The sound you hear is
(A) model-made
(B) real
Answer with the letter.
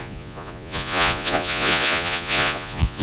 A